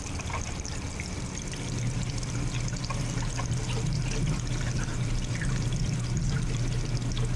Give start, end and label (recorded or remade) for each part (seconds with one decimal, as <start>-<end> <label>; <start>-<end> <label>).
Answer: 0.0-4.9 recorded; 4.9-6.6 remade; 6.6-7.4 recorded